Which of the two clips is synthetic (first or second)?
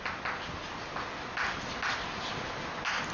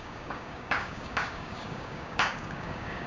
second